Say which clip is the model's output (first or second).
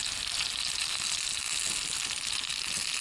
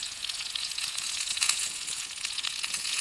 second